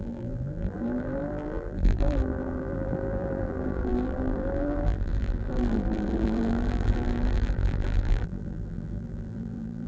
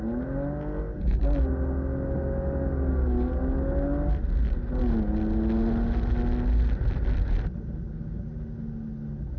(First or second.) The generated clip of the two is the first